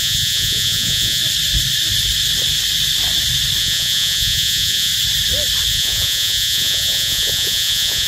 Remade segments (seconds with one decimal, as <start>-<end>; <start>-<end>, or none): 0.0-1.2; 3.6-4.9; 5.7-8.1